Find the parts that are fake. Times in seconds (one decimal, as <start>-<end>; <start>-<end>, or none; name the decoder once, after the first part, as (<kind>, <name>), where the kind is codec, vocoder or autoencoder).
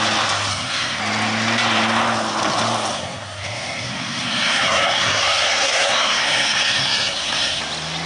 0.5-1.0 (codec, SNAC); 2.9-7.6